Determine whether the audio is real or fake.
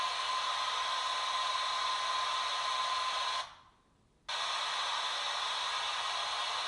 real